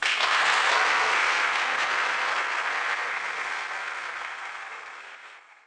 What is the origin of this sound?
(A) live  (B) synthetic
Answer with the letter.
B